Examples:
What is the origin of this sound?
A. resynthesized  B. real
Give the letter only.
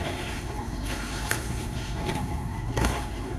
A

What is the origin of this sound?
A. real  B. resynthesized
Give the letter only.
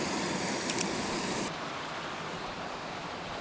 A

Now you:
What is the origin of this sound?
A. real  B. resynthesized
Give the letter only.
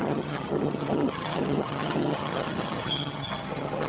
B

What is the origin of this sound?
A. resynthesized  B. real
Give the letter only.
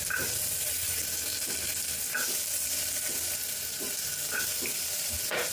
B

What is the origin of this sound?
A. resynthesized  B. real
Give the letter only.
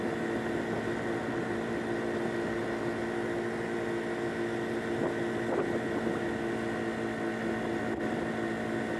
B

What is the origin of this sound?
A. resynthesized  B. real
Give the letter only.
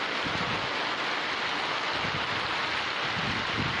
B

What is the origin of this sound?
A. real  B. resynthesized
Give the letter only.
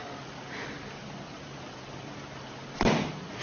A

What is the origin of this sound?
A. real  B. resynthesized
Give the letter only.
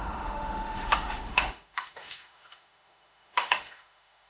B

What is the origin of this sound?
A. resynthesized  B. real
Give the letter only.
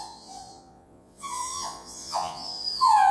A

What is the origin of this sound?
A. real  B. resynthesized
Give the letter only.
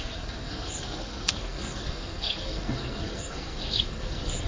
B